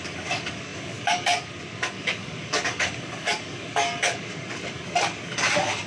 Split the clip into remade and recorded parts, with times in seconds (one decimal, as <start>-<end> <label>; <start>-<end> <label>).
0.0-5.9 remade